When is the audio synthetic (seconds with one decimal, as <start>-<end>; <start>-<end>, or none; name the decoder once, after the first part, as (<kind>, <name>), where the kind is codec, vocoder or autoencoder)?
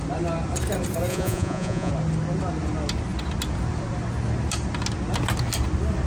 1.1-1.9 (vocoder, Vocos)